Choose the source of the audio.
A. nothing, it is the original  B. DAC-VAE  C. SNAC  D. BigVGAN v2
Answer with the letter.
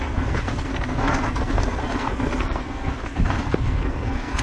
C